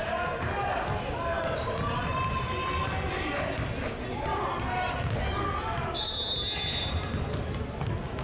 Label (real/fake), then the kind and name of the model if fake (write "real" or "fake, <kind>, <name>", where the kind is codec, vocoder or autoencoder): real